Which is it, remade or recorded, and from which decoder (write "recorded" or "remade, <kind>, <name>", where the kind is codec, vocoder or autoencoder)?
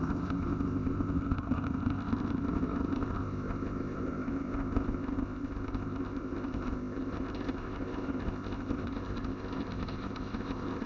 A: remade, codec, ZipCodec